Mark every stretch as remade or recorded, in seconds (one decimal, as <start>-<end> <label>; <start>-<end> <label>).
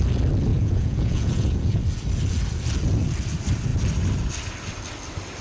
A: 0.0-0.5 recorded; 0.5-1.8 remade; 1.8-5.4 recorded